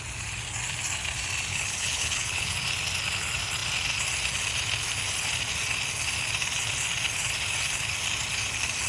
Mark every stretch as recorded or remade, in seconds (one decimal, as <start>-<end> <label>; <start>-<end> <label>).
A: 0.0-1.5 recorded; 1.5-2.5 remade; 2.5-8.9 recorded